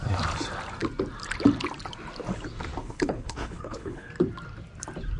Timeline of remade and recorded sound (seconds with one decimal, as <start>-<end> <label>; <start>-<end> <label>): 0.0-2.8 recorded; 2.8-4.1 remade; 4.1-5.2 recorded